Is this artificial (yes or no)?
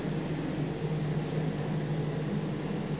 no